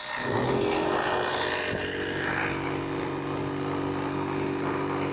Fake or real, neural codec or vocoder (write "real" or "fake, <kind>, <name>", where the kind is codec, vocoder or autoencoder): real